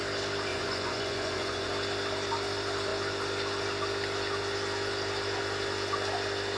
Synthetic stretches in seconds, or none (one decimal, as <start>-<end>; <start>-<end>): 0.5-1.7